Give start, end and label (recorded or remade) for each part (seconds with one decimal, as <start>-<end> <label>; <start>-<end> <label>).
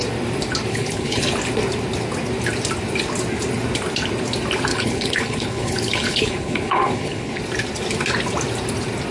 0.0-0.7 recorded; 0.7-1.3 remade; 1.3-4.7 recorded; 4.7-7.4 remade; 7.4-9.1 recorded